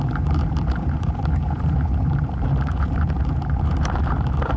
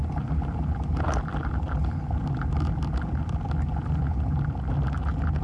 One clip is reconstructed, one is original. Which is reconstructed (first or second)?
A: first